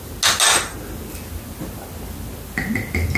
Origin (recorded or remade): recorded